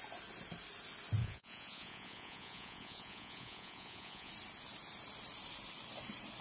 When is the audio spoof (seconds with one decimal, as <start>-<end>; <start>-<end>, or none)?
1.2-4.3